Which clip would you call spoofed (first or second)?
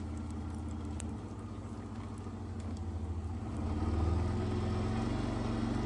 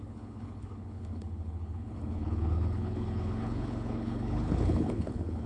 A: second